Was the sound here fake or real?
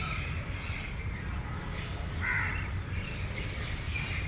real